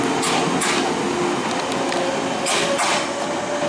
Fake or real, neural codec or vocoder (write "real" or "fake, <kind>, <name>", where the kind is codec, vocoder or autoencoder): real